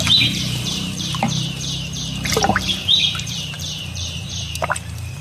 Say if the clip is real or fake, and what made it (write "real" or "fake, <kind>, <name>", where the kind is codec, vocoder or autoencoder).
fake, vocoder, BigVGAN v2